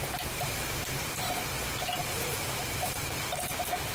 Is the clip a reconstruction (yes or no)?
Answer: yes